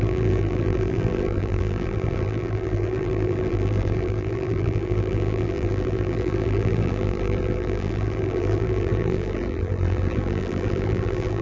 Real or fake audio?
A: fake